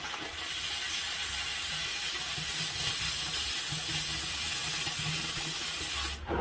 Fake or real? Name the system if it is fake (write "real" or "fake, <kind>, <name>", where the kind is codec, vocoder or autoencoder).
real